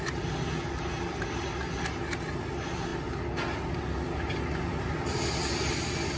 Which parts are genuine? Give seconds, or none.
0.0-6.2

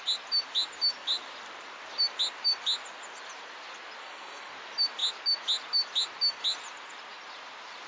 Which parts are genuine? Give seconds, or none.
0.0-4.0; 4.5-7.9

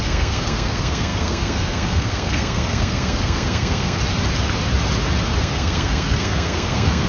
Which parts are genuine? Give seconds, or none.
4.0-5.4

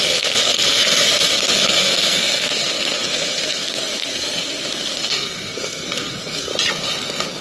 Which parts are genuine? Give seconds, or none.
6.5-7.4

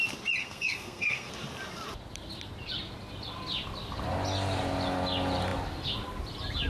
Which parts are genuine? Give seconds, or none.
0.0-0.4; 1.3-6.7

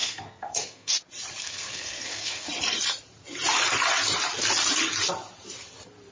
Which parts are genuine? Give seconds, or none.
0.9-1.4; 2.5-6.1

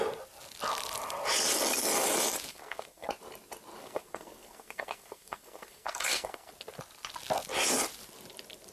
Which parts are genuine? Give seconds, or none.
0.0-2.5; 3.1-3.8; 6.5-8.7